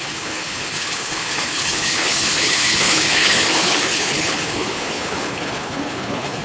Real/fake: fake